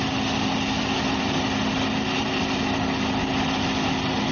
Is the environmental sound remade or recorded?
recorded